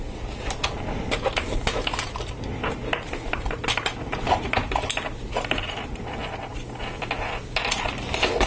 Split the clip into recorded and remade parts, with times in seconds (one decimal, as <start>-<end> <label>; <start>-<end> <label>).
0.0-0.6 remade; 0.6-1.3 recorded; 1.3-4.6 remade; 4.6-5.2 recorded; 5.2-6.5 remade; 6.5-7.2 recorded; 7.2-8.5 remade